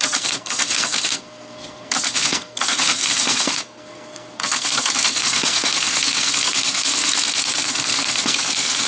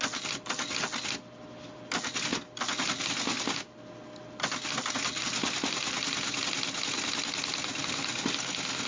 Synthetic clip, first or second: first